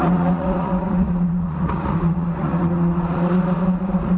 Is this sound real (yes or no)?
no